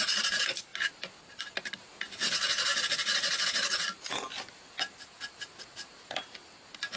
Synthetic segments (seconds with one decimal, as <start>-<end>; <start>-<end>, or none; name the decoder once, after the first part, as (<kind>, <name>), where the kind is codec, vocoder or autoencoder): 0.0-0.7 (vocoder, BigVGAN v2); 1.3-2.7